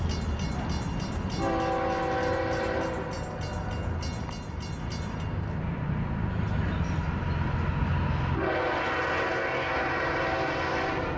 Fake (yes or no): no